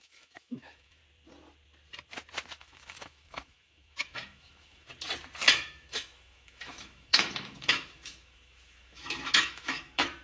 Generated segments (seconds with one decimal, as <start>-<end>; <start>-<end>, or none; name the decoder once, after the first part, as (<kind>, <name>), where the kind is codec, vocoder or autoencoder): 0.0-1.0 (autoencoder, DAC-VAE); 2.5-4.9; 5.5-10.2